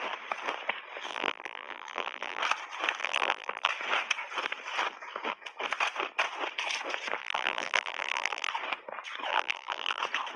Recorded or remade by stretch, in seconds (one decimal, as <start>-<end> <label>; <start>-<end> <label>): 0.0-1.1 recorded; 1.1-2.4 remade; 2.4-3.0 recorded; 3.0-3.7 remade; 3.7-7.2 recorded; 7.2-8.5 remade; 8.5-9.3 recorded; 9.3-10.0 remade; 10.0-10.4 recorded